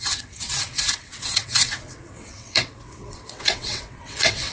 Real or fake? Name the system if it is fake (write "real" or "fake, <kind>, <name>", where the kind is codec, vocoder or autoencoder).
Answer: fake, vocoder, WaveNeXt